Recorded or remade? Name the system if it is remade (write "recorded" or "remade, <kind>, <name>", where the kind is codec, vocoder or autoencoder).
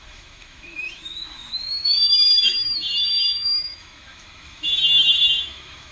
remade, autoencoder, DAC-VAE